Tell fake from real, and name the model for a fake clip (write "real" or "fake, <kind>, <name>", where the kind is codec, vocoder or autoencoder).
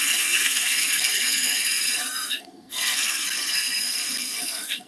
fake, codec, SNAC